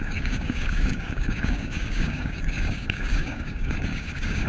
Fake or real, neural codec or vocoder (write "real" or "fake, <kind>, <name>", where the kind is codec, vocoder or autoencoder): fake, codec, DAC